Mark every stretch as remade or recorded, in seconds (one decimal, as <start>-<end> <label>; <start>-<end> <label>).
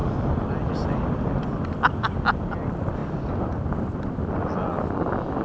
0.0-5.4 recorded